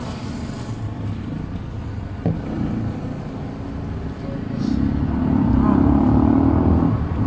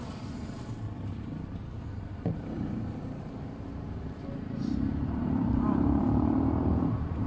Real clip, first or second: first